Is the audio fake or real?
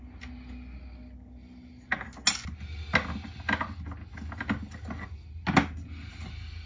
real